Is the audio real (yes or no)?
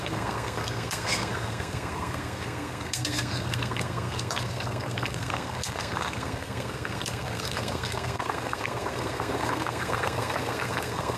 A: no